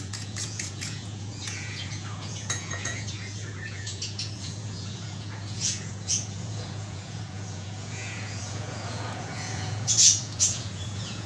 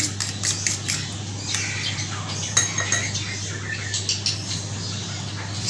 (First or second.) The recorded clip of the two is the second